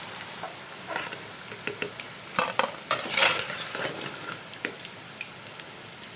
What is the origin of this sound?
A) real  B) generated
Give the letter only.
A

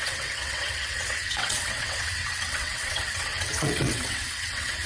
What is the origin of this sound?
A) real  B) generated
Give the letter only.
B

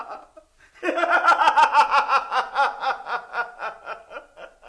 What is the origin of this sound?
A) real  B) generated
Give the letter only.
A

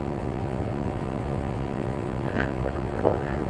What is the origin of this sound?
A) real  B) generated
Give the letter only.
B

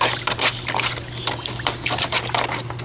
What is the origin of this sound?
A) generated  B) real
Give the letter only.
B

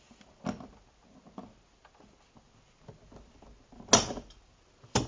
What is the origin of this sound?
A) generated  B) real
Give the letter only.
B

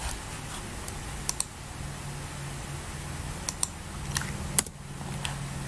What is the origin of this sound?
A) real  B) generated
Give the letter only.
A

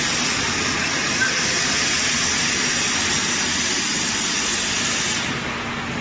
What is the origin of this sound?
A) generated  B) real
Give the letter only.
B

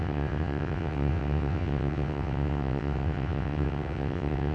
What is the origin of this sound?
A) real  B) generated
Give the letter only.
B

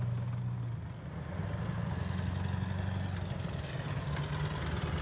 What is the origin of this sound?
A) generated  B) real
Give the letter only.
B